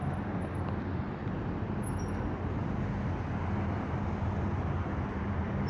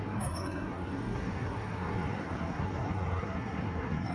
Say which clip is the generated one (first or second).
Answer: second